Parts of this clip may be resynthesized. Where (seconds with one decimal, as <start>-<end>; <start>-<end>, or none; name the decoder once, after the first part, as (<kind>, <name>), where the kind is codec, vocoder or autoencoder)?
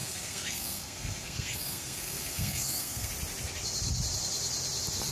0.0-3.1 (codec, SNAC)